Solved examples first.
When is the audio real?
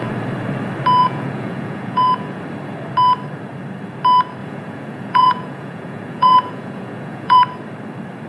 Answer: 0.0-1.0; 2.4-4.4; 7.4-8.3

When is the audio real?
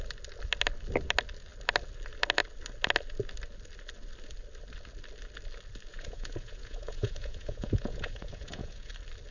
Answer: 0.0-5.9; 8.9-9.3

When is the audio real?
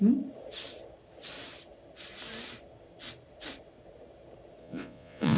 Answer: 0.0-4.6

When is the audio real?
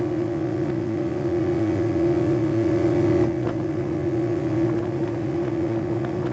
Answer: none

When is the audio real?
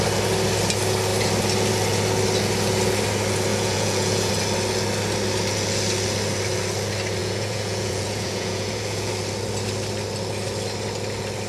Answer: 0.0-3.5; 4.3-7.2; 9.1-11.5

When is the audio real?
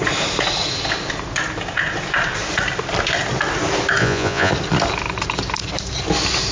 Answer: 0.0-4.0; 4.5-6.5